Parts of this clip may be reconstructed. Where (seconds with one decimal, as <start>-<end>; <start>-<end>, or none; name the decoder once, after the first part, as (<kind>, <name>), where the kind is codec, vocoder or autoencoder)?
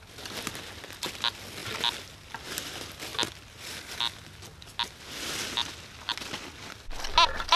none